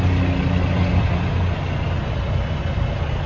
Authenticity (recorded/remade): recorded